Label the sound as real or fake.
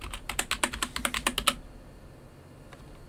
real